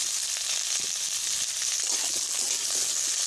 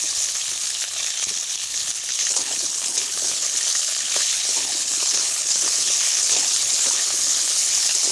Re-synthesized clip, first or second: second